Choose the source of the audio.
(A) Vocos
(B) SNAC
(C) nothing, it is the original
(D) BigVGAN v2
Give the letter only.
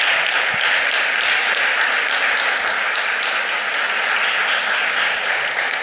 C